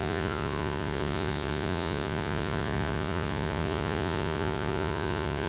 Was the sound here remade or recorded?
remade